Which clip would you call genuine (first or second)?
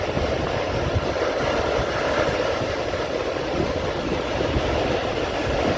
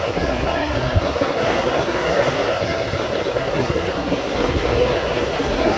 first